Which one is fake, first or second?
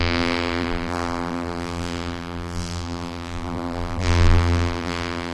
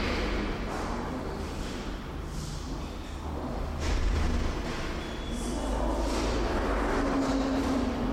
first